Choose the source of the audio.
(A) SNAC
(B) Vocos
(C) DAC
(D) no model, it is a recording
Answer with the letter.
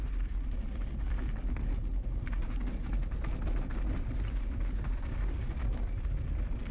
D